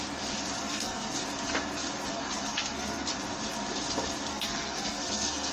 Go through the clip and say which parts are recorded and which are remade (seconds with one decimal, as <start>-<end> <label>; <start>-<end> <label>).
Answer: 0.0-0.6 recorded; 0.6-1.2 remade; 1.2-2.1 recorded; 2.1-3.1 remade; 3.1-4.3 recorded; 4.3-5.5 remade